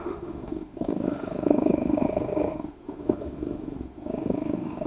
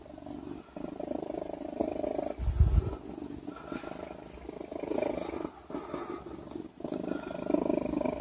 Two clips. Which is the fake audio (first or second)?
first